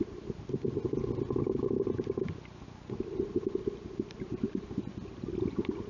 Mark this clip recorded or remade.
recorded